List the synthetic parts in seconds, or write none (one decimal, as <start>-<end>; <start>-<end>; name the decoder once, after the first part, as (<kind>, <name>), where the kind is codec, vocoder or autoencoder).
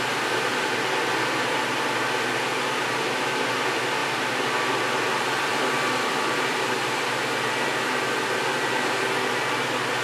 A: 0.5-1.6 (vocoder, BigVGAN v2); 4.0-7.0